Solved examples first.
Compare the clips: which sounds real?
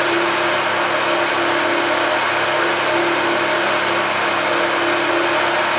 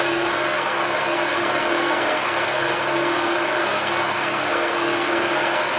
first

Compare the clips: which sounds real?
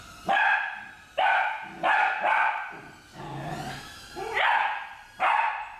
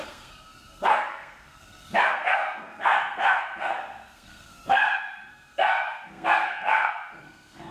first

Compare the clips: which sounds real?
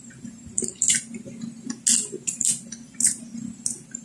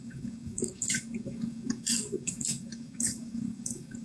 first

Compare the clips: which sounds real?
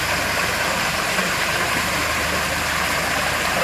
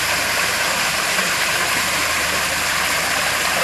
first